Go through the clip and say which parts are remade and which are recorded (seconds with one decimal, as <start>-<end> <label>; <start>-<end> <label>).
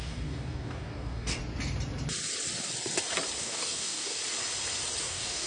0.0-1.4 remade; 1.4-3.4 recorded; 3.4-4.2 remade; 4.2-5.0 recorded; 5.0-5.5 remade